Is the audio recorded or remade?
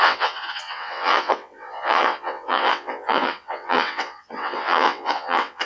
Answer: remade